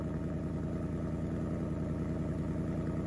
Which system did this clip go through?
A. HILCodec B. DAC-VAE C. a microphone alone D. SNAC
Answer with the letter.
C